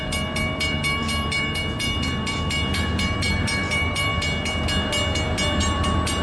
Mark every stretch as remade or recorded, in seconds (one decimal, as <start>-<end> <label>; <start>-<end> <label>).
0.0-4.1 remade; 4.1-5.6 recorded; 5.6-6.2 remade